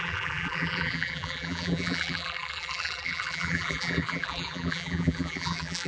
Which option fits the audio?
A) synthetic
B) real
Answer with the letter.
A